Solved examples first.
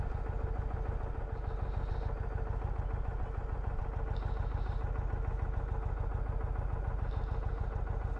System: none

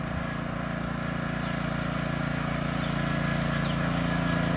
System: none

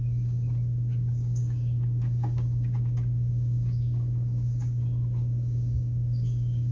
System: codec, DAC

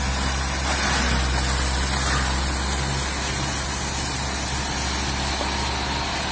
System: none